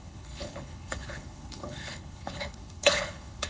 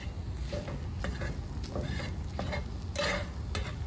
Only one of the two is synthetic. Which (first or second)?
first